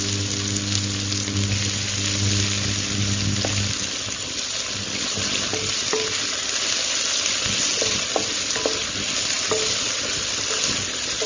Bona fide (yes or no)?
yes